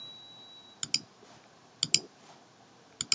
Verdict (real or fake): real